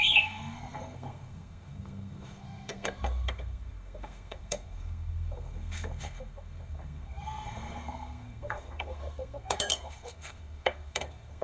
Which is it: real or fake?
fake